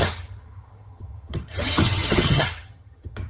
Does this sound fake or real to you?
fake